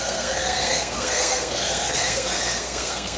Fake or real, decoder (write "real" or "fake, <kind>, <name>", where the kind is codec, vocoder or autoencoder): fake, codec, SNAC